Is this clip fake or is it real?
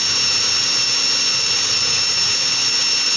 real